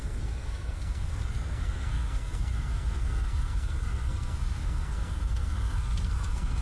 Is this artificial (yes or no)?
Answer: yes